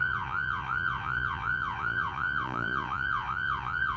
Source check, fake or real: fake